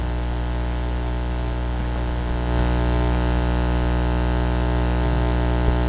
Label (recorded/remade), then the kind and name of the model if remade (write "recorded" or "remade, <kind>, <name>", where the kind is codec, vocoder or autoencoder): recorded